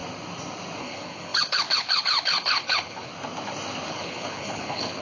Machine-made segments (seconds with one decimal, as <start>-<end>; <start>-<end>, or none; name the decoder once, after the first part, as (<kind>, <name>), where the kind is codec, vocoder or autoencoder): 0.8-3.1 (codec, HILCodec); 3.9-5.0